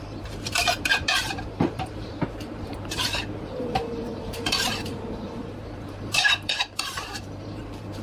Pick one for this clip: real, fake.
fake